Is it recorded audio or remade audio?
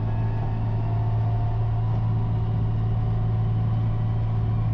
recorded